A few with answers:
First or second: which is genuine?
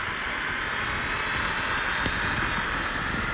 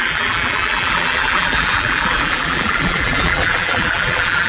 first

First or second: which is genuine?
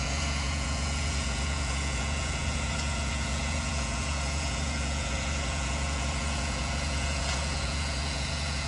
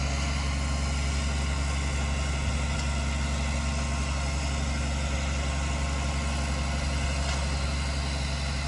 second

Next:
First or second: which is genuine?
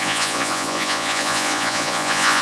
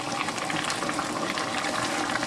second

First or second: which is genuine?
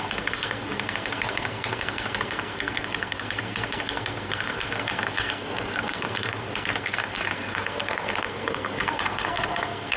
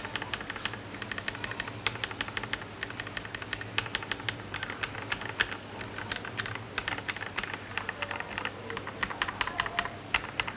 second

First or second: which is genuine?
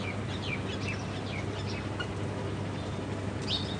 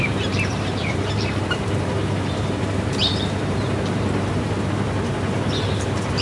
first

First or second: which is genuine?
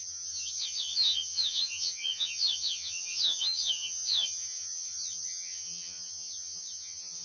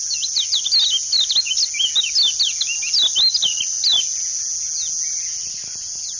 second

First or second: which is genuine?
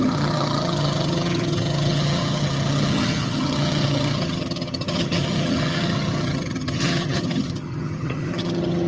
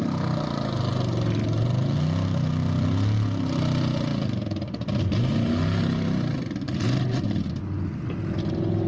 second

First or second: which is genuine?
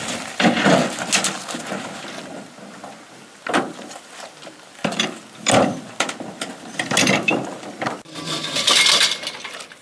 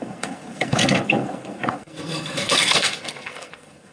first